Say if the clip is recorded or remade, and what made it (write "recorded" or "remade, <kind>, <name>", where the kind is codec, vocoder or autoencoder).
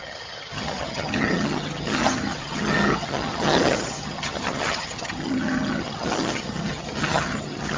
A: remade, vocoder, HiFi-GAN